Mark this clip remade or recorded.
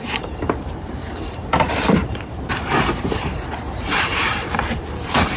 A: remade